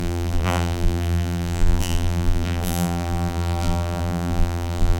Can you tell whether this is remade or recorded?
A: remade